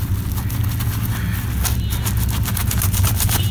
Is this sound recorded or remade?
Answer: recorded